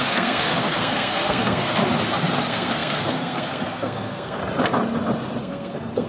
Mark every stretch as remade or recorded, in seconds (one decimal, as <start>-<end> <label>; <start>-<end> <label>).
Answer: 0.0-1.8 remade; 1.8-2.4 recorded; 2.4-4.4 remade; 4.4-5.4 recorded; 5.4-6.1 remade